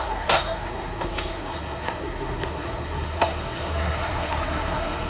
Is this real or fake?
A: fake